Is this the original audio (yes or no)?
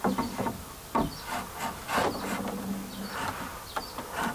yes